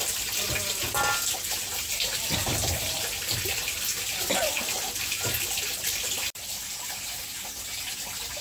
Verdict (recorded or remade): recorded